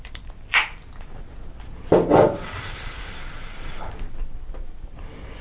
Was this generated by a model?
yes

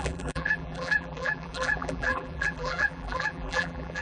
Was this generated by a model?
yes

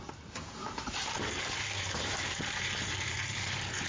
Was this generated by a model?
yes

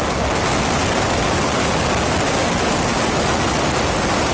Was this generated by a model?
no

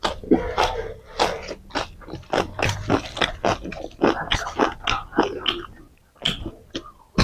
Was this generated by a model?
no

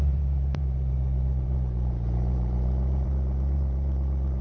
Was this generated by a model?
yes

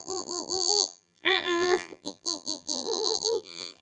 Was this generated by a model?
yes